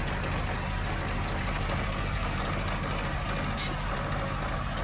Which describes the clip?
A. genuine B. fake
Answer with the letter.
A